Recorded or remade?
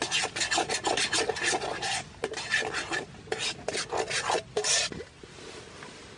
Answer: recorded